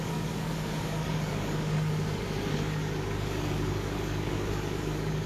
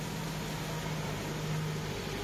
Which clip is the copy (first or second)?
first